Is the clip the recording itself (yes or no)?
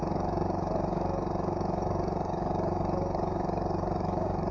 no